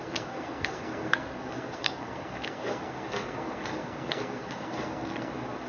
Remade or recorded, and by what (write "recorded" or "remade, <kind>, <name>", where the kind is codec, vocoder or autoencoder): remade, codec, SNAC